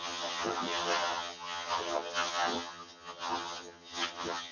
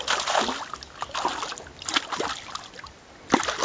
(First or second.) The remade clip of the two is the first